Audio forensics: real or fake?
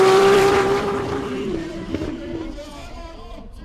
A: fake